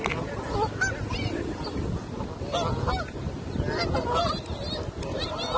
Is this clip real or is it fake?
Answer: real